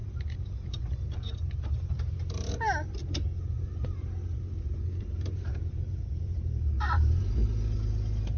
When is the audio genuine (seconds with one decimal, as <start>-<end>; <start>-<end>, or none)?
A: 3.0-5.0; 7.4-8.4

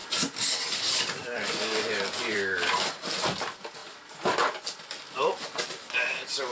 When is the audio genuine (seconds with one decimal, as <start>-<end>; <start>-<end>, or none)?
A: 0.0-0.7; 3.8-4.8